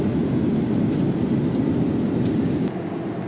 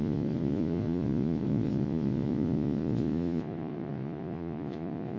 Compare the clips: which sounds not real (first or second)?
second